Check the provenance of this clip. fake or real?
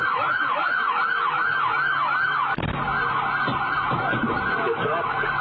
real